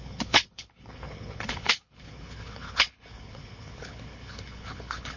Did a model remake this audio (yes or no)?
yes